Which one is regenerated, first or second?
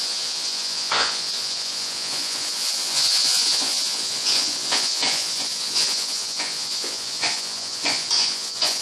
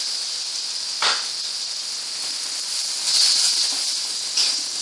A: first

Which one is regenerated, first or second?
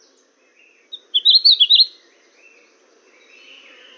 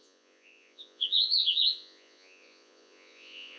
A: second